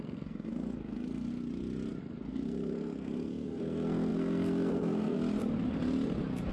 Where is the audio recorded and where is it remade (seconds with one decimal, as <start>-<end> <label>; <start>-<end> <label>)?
0.0-1.3 remade; 1.3-2.0 recorded; 2.0-5.2 remade; 5.2-6.5 recorded